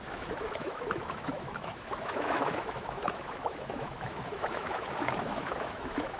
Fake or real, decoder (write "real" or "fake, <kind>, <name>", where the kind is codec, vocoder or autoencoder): fake, autoencoder, DAC-VAE